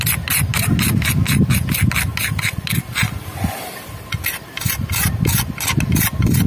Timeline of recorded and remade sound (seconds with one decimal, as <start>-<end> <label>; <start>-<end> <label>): 0.0-6.5 recorded